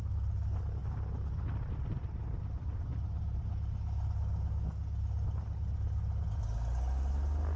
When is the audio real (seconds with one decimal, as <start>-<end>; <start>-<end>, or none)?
0.0-7.6